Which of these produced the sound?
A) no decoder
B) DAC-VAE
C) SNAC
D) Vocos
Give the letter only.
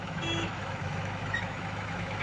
B